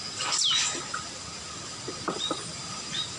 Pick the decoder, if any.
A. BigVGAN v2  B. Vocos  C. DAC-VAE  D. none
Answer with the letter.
D